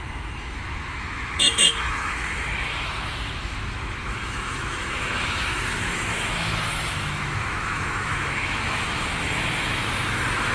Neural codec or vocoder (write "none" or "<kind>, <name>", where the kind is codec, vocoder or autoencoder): autoencoder, DAC-VAE